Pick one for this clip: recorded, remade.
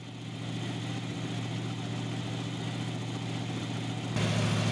recorded